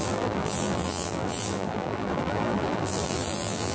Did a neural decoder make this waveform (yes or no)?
yes